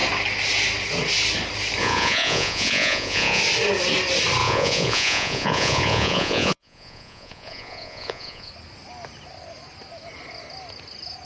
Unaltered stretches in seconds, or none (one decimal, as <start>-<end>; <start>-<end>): 0.0-1.8; 3.4-4.4; 8.5-11.2

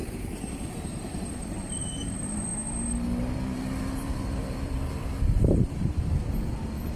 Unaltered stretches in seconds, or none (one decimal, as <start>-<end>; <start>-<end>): 2.5-3.2

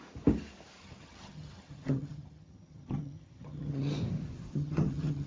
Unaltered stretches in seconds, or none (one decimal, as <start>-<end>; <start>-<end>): 0.0-0.8; 4.0-4.5

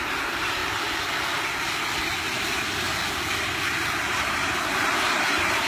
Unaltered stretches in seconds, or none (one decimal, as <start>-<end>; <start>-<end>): 0.6-4.0

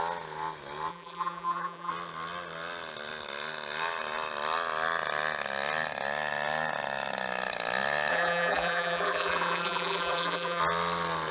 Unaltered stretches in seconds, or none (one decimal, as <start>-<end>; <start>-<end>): 0.0-0.9; 1.9-8.1; 10.6-11.3

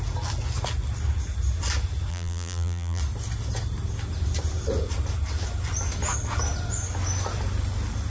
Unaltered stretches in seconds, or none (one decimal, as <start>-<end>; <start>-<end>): 0.0-2.1; 3.0-8.1